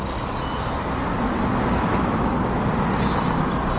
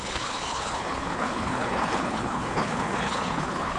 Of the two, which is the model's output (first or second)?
second